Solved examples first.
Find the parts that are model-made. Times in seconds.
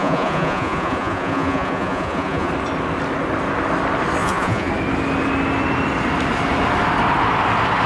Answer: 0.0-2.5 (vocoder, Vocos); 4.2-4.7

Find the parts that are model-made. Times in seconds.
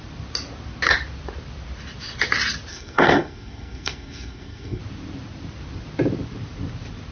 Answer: 2.7-4.8 (codec, SNAC)